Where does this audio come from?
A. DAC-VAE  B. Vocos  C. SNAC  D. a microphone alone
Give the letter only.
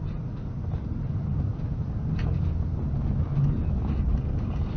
D